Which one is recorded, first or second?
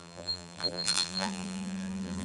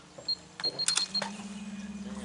second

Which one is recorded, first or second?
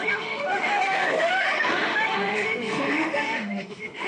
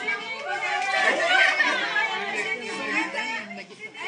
second